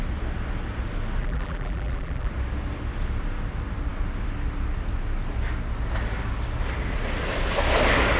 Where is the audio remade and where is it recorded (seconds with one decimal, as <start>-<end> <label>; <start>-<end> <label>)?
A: 0.0-1.2 recorded; 1.2-2.3 remade; 2.3-8.2 recorded